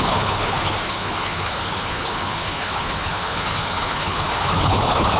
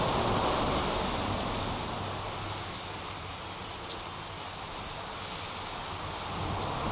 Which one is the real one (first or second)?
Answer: second